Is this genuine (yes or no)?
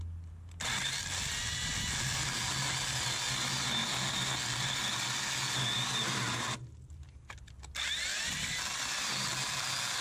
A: yes